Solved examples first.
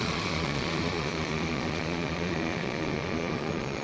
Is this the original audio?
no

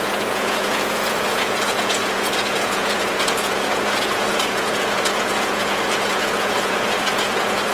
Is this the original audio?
no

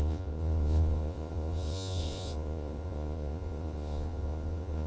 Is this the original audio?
no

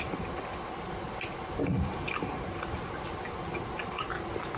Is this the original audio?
yes